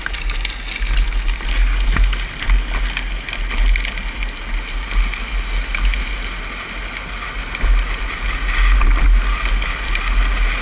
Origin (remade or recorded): recorded